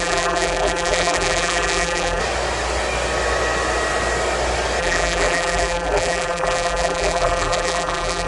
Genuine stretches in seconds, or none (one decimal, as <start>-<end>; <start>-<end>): 2.2-4.8

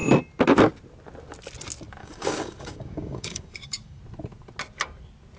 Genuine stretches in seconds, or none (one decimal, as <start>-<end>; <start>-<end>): 0.0-2.0; 4.0-5.4

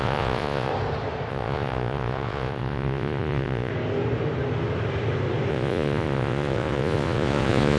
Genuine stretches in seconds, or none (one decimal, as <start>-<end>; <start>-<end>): 0.7-1.3; 3.7-5.5

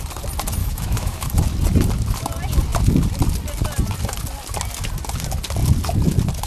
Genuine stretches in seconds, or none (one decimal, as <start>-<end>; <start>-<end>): 0.0-0.6; 1.3-6.5

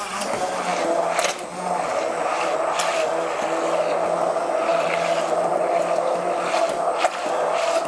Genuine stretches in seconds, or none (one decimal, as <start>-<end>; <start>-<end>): 0.0-7.9

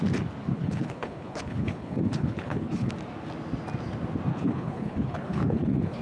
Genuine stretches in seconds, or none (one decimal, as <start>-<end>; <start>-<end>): 0.0-0.5; 2.9-4.3